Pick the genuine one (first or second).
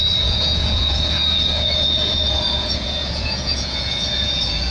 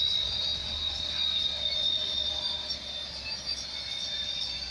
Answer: second